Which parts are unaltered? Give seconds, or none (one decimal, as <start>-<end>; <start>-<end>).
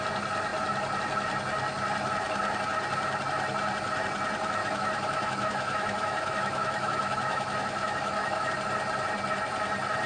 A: 0.0-4.6; 8.5-10.1